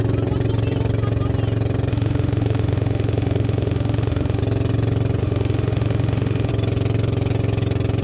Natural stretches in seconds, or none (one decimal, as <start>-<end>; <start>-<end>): 0.0-1.9; 4.4-5.2; 6.5-8.0